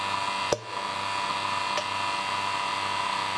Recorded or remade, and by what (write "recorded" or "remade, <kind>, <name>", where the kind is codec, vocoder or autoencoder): recorded